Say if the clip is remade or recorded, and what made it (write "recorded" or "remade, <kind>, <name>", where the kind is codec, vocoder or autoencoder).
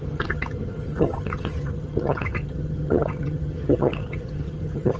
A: remade, vocoder, HiFi-GAN